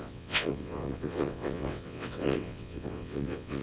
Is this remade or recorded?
remade